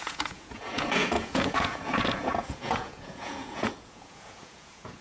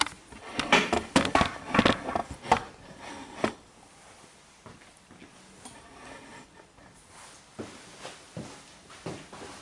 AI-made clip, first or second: first